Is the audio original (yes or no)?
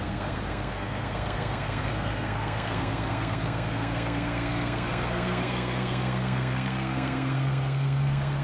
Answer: no